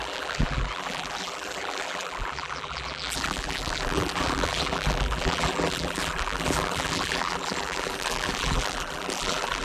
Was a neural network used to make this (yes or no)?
yes